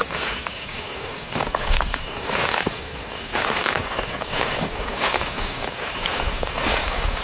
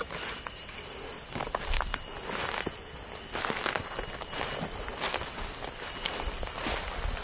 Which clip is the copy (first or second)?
first